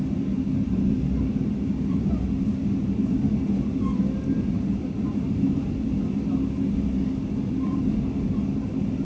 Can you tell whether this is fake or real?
real